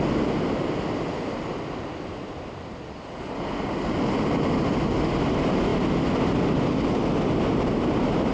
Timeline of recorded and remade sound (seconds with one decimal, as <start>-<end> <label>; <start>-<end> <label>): 0.0-8.3 recorded